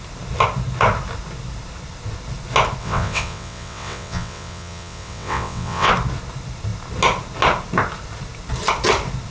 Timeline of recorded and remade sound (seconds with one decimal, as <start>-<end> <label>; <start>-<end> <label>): 0.0-2.8 recorded; 2.8-5.9 remade; 5.9-9.3 recorded